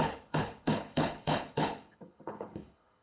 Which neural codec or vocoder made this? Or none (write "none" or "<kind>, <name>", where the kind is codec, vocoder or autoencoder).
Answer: codec, HILCodec